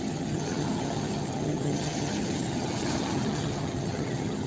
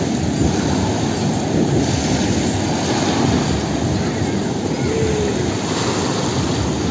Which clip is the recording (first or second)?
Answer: second